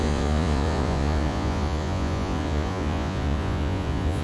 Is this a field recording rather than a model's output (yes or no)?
no